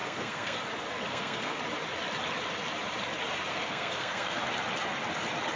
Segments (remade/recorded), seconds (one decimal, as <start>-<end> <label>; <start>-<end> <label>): 0.0-0.6 remade; 0.6-1.1 recorded; 1.1-1.6 remade; 1.6-3.5 recorded; 3.5-4.4 remade; 4.4-5.6 recorded